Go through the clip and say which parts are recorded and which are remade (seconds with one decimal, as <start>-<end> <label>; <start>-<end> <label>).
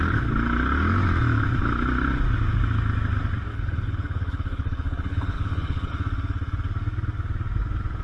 0.0-3.5 recorded; 3.5-5.9 remade; 5.9-8.0 recorded